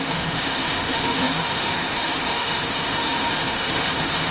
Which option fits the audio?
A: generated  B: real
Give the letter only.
A